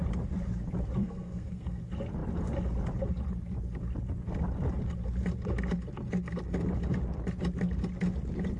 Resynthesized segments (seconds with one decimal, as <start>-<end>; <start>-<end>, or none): 1.0-1.8